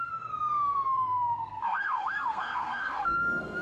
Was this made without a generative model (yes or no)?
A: no